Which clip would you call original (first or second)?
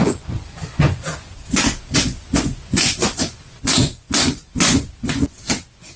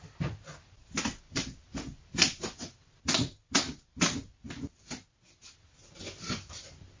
second